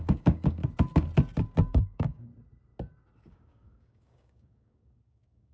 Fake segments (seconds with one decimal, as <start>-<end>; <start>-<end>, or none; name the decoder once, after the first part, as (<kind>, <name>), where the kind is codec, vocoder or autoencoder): 0.0-0.6 (codec, DAC); 1.7-2.3; 3.3-5.5